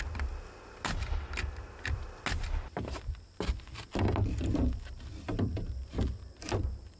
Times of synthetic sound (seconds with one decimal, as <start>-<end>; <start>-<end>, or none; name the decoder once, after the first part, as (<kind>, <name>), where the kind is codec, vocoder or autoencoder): none